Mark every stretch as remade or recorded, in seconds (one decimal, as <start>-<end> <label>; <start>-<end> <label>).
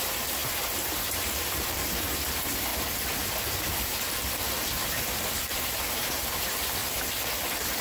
0.0-2.7 remade; 2.7-3.4 recorded; 3.4-6.8 remade; 6.8-7.8 recorded